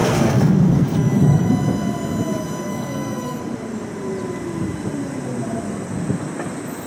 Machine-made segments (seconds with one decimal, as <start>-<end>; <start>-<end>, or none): 0.0-1.5; 2.7-3.4

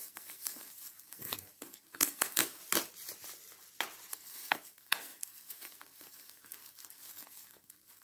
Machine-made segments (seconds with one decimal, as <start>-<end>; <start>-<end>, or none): 0.0-2.6; 4.1-8.0

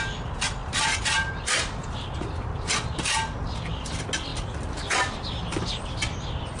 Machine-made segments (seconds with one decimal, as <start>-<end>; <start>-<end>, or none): none

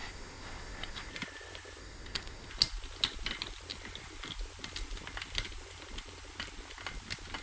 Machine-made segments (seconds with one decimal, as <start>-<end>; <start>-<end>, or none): 0.0-1.1; 1.8-2.5

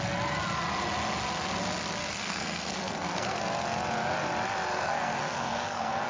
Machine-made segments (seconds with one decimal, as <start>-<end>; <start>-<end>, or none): 2.0-3.4; 4.7-6.1